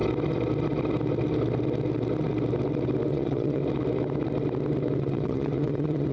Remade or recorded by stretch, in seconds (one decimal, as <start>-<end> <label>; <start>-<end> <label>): 0.0-3.1 recorded; 3.1-3.6 remade; 3.6-5.0 recorded; 5.0-6.1 remade